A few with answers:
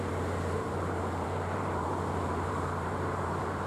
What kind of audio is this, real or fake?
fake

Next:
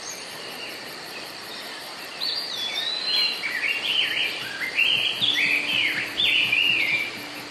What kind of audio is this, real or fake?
fake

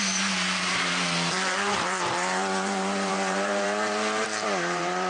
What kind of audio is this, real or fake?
fake